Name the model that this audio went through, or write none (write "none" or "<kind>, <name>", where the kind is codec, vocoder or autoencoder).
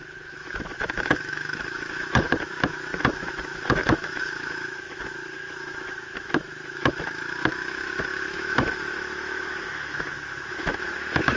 autoencoder, DAC-VAE